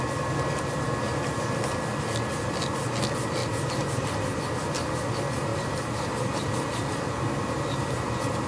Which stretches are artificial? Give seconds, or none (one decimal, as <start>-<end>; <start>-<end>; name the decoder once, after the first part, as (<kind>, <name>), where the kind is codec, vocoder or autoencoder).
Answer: 5.5-6.5 (vocoder, BigVGAN v2)